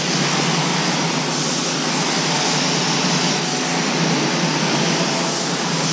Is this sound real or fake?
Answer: real